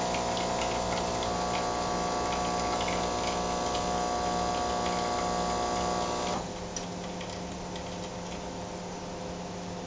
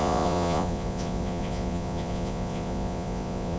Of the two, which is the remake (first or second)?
second